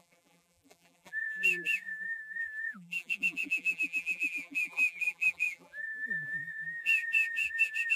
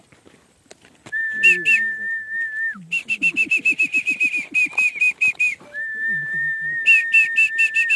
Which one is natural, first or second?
second